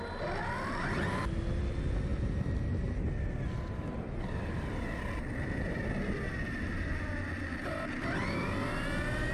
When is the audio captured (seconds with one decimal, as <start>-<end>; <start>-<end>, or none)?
0.0-9.3